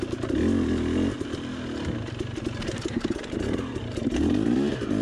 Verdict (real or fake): real